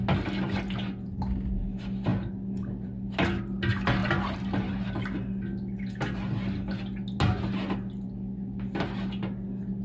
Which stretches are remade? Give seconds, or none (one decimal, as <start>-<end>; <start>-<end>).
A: none